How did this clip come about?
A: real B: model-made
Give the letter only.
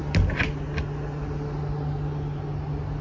A